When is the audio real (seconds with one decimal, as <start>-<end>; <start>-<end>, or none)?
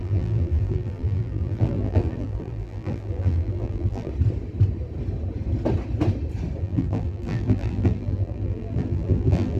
4.1-6.6